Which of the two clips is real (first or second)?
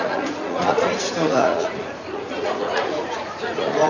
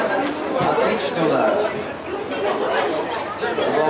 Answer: second